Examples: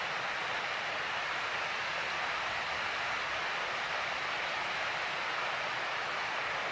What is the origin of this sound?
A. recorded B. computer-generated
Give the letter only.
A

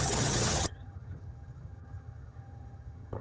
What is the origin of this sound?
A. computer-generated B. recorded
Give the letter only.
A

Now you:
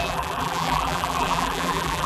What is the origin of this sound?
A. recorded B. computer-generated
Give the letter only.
B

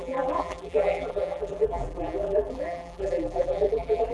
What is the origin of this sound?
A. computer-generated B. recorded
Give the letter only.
A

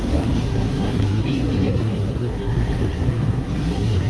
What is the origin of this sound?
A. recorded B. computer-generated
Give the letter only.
B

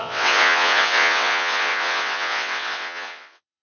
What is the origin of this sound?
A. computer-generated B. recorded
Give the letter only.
A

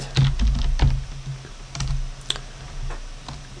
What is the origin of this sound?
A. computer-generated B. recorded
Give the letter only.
B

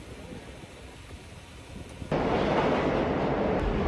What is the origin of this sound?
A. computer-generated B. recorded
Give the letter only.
B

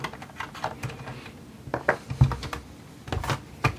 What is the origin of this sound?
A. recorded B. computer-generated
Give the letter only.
A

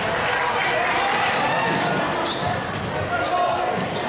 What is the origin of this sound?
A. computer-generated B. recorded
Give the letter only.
B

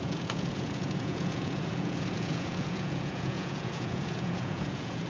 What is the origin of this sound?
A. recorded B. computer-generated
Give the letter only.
B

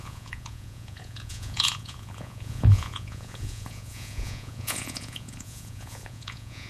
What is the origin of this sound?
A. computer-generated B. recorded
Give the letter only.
A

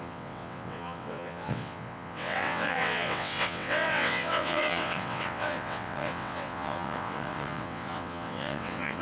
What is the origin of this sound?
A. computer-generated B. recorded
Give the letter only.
A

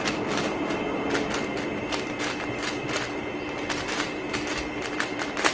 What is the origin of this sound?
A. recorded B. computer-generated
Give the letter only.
A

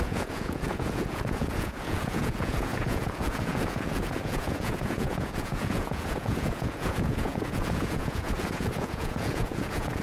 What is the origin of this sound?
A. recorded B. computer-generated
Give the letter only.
B